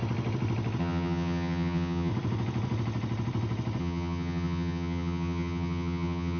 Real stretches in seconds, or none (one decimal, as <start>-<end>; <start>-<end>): 0.0-0.8; 2.1-3.8